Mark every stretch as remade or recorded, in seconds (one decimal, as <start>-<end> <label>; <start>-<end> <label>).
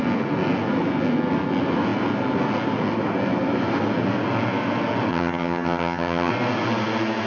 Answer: 0.0-5.1 recorded; 5.1-6.3 remade; 6.3-7.3 recorded